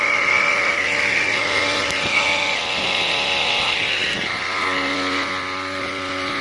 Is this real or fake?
real